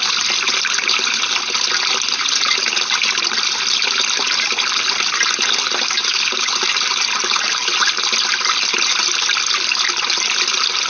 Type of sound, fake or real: real